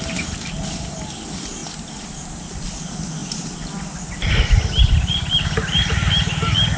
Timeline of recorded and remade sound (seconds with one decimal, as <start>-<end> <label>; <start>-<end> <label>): 0.0-6.8 recorded